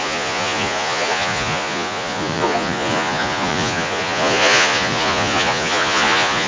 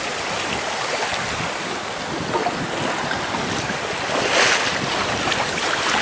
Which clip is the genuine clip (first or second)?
second